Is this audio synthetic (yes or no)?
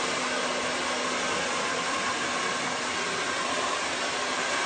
no